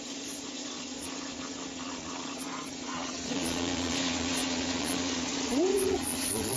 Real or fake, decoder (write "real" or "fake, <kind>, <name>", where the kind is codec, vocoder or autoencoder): fake, vocoder, Vocos